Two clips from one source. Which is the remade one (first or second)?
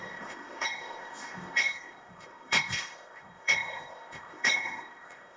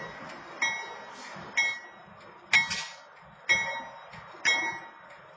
first